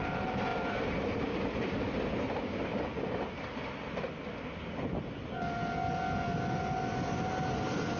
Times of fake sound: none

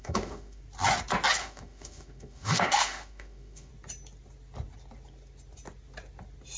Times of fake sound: 0.0-0.6 (autoencoder, DAC-VAE); 1.4-3.7

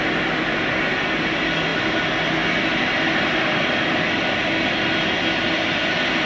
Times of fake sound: none

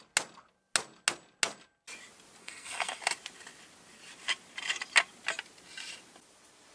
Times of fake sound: 2.4-3.0 (codec, SNAC)

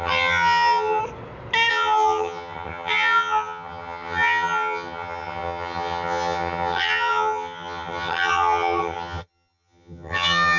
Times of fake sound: 0.0-1.0 (vocoder, HiFi-GAN); 1.7-10.6

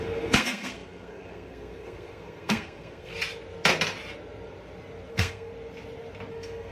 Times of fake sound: 0.0-3.1 (codec, SNAC); 5.1-5.5; 6.3-6.7